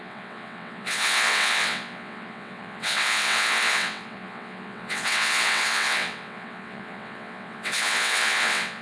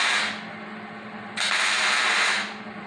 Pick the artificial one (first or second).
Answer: first